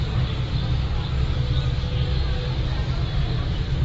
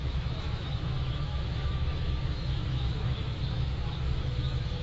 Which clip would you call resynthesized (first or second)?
second